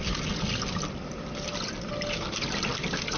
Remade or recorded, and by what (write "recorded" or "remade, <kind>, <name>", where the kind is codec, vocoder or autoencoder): recorded